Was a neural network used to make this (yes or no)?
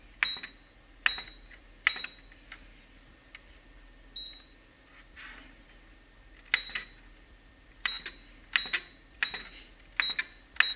no